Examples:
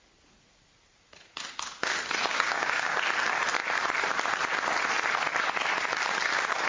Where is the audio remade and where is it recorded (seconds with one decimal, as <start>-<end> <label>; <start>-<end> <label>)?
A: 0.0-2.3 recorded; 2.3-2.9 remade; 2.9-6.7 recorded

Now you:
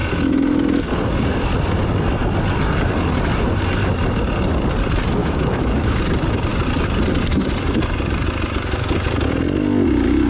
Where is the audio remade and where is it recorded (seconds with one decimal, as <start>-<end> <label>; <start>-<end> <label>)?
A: 0.0-5.2 recorded; 5.2-6.0 remade; 6.0-10.3 recorded

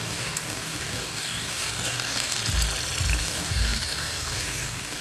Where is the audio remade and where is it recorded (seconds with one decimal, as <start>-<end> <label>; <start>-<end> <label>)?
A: 0.0-2.4 remade; 2.4-3.2 recorded; 3.2-5.0 remade